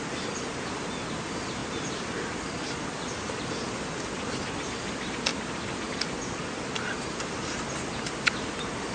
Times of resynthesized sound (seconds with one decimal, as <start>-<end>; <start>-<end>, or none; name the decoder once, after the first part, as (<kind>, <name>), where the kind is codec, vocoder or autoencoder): 1.6-4.0 (vocoder, BigVGAN v2); 5.3-7.2